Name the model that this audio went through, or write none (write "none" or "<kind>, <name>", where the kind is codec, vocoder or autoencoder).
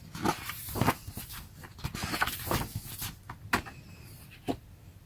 none